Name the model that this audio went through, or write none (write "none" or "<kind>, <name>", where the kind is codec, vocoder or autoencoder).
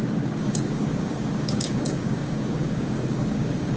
codec, DAC